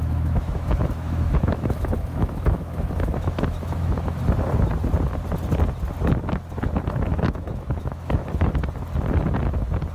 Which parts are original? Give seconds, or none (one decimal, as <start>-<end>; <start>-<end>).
4.2-7.1; 8.5-9.9